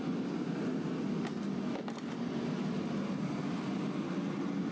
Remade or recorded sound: recorded